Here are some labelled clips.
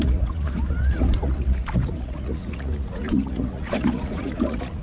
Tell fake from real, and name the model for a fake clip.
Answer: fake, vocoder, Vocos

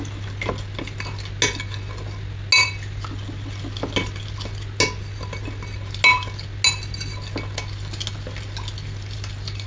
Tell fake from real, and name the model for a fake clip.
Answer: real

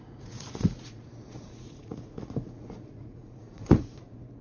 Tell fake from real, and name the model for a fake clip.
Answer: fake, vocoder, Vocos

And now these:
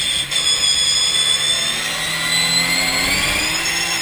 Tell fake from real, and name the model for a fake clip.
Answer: real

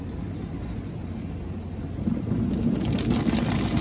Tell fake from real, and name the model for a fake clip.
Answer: real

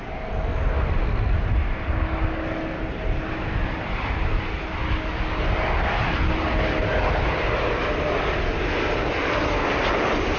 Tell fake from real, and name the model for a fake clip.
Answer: real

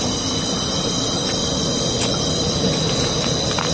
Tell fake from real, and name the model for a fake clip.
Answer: fake, vocoder, BigVGAN v2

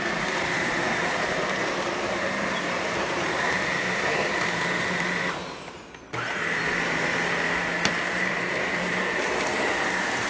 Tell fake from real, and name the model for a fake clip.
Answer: fake, vocoder, BigVGAN v2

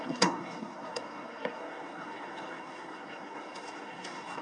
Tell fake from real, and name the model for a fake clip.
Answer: fake, codec, SNAC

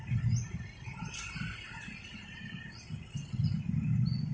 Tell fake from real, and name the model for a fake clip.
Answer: real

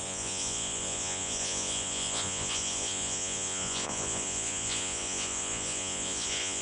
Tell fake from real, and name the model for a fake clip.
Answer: fake, vocoder, Vocos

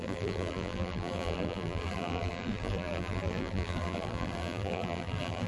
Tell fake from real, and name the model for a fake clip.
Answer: fake, vocoder, BigVGAN v2